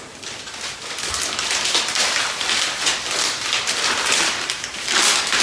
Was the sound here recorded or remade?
recorded